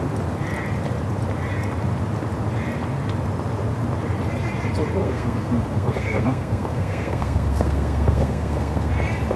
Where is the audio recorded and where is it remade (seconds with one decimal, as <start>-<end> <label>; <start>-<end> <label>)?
0.0-5.0 recorded; 5.0-8.9 remade; 8.9-9.4 recorded